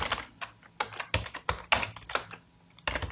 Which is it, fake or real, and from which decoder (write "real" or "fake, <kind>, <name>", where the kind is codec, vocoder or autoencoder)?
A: real